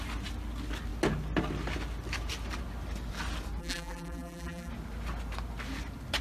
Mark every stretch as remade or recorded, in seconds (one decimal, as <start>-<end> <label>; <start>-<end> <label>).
0.0-3.6 recorded; 3.6-4.7 remade; 4.7-6.2 recorded